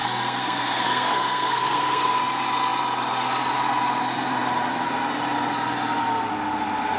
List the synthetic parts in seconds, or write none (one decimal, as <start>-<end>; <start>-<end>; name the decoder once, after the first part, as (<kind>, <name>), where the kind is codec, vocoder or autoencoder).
0.0-2.2 (codec, SNAC)